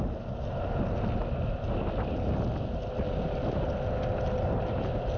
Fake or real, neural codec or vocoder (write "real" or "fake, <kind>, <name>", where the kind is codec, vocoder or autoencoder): real